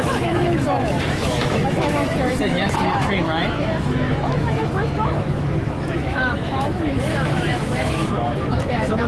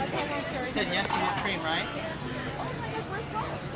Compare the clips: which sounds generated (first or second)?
first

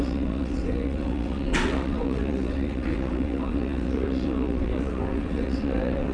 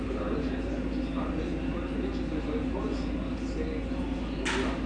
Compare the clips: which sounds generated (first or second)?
first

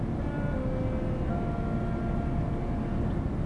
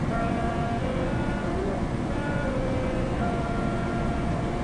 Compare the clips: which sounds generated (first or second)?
second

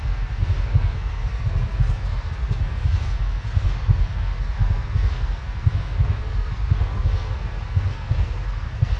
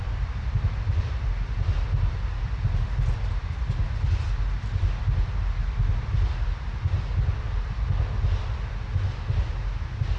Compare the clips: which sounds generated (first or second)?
first